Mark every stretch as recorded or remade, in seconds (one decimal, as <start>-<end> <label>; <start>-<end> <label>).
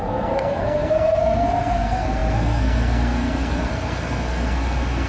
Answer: 0.0-5.1 remade